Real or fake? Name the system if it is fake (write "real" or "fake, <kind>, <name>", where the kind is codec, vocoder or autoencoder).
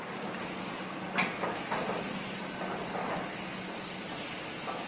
real